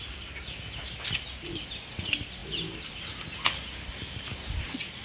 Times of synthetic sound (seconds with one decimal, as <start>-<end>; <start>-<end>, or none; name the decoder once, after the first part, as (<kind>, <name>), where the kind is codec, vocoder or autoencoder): none